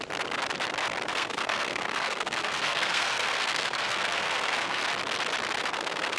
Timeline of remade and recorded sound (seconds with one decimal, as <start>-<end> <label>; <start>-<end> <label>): 0.0-1.1 recorded; 1.1-4.8 remade; 4.8-5.6 recorded; 5.6-6.2 remade